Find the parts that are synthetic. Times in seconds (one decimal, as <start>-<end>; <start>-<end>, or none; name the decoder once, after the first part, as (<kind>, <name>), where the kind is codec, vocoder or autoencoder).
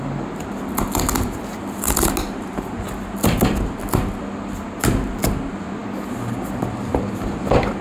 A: none